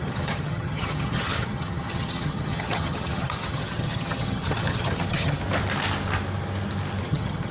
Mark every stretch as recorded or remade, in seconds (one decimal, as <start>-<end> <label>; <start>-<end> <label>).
0.0-5.4 remade; 5.4-7.0 recorded; 7.0-7.5 remade